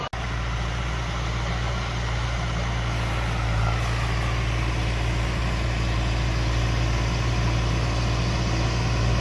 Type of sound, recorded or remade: recorded